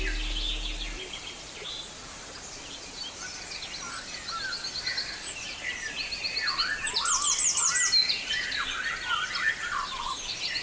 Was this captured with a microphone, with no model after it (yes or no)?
yes